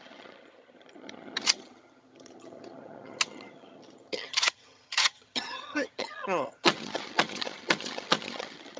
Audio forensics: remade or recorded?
remade